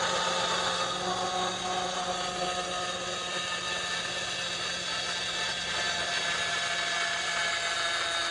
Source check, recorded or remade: recorded